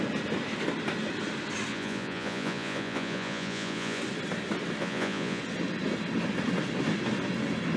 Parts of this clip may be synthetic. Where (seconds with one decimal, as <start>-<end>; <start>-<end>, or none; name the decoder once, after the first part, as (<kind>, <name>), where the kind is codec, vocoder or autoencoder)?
1.7-4.0 (vocoder, Vocos); 4.8-5.4